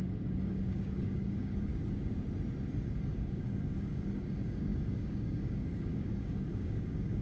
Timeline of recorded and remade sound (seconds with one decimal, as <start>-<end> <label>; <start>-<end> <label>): 0.0-1.7 remade; 1.7-3.1 recorded; 3.1-7.2 remade